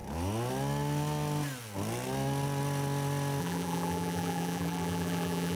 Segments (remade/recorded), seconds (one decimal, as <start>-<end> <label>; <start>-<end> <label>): 0.0-3.4 recorded; 3.4-5.6 remade